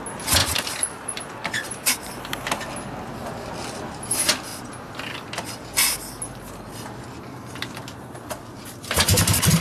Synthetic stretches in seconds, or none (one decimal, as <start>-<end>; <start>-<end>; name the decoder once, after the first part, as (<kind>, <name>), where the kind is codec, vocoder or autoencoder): 0.4-2.2 (vocoder, BigVGAN v2)